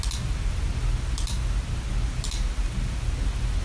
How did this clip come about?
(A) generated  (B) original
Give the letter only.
B